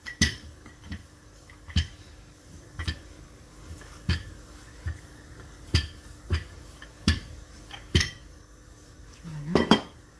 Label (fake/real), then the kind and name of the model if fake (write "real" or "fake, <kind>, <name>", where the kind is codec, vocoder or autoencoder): fake, codec, DAC